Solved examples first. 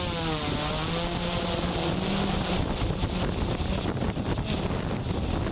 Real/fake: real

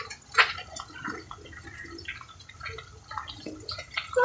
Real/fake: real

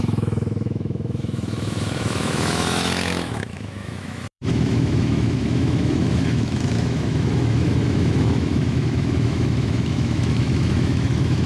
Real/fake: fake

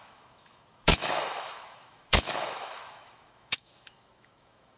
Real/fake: fake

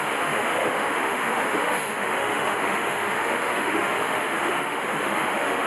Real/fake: fake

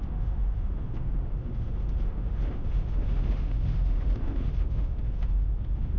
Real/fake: fake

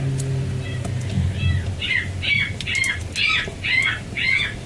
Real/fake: real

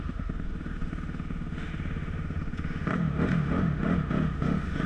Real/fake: fake